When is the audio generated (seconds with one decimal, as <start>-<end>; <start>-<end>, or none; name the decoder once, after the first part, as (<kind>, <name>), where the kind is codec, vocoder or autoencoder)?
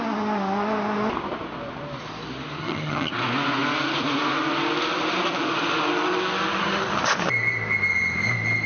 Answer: 2.6-3.1 (vocoder, HiFi-GAN)